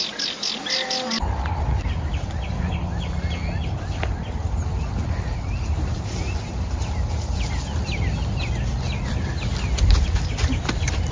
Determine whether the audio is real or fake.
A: real